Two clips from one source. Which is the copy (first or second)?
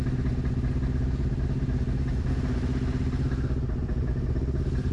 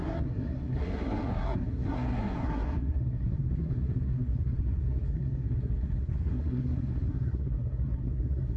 second